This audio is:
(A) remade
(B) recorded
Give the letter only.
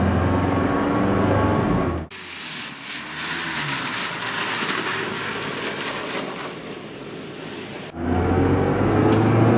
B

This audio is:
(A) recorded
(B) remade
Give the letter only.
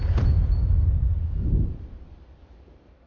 B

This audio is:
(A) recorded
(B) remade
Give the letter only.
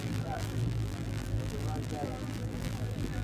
B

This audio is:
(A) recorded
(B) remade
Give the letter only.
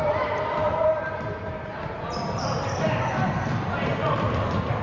B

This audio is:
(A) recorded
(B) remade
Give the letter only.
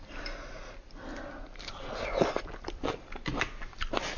A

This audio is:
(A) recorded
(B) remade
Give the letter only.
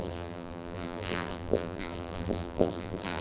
B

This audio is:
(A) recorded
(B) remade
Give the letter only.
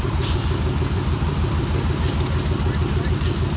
B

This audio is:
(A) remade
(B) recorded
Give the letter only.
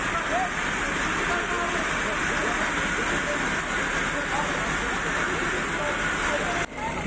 B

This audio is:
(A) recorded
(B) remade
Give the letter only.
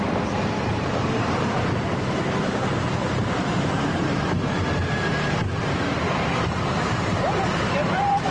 B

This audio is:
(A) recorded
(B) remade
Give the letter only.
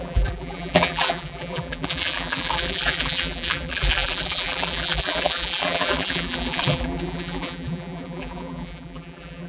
B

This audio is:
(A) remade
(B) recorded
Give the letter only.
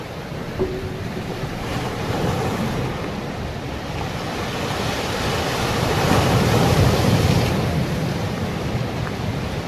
A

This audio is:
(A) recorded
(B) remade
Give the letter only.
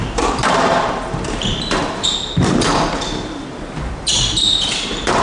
B